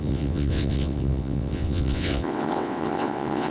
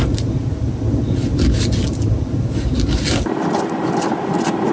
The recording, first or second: second